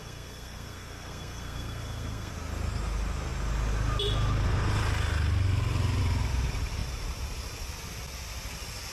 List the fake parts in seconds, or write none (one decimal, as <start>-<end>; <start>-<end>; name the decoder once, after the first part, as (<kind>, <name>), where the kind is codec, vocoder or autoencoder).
0.0-2.3 (codec, SNAC)